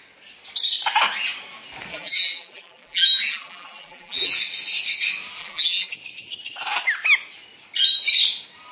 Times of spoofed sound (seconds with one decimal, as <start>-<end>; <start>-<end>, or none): 1.9-4.3; 5.4-5.9